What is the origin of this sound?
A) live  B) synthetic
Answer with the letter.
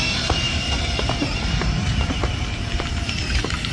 B